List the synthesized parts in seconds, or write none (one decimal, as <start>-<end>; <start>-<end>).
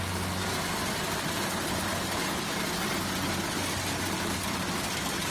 none